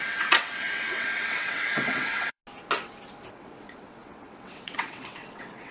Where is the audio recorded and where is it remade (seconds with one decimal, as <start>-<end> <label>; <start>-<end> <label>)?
0.0-2.4 remade; 2.4-3.3 recorded; 3.3-5.7 remade